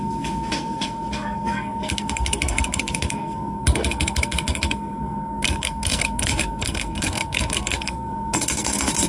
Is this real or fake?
fake